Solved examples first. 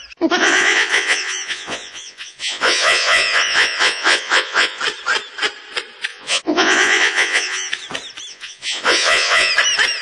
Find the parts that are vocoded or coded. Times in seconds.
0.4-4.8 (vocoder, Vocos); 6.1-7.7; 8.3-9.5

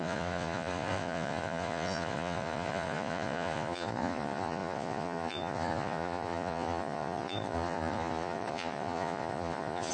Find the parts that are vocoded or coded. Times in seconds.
0.0-9.9 (vocoder, Vocos)